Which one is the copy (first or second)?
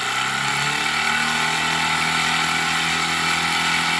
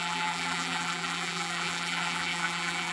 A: second